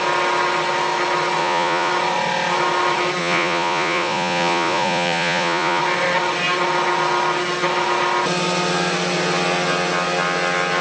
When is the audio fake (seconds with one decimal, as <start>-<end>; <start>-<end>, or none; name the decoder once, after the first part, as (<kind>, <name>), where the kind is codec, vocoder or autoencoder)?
1.4-1.9 (vocoder, Vocos); 3.2-5.8